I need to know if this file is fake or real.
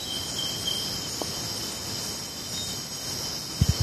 real